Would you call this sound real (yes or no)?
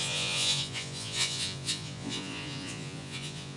no